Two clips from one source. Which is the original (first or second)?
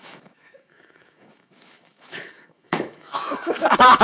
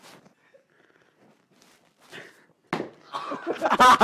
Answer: second